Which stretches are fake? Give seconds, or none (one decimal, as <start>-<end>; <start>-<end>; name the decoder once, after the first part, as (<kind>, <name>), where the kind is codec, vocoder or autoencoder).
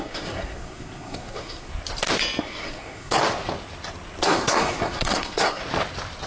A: 0.0-1.7 (codec, SNAC); 2.4-3.2; 4.2-5.6